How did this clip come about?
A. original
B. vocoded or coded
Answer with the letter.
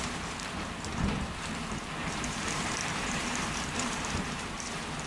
B